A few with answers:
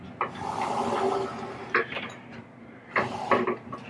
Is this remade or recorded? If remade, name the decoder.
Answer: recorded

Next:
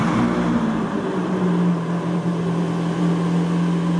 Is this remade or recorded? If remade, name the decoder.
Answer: recorded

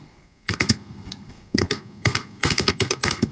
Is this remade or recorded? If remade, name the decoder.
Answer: remade, codec, SNAC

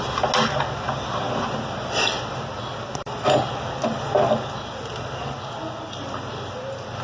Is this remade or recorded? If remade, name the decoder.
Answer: recorded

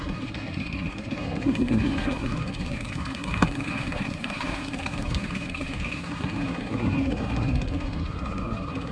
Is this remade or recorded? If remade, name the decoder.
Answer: remade, codec, SNAC